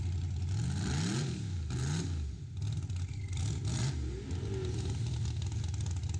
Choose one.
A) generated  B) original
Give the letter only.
B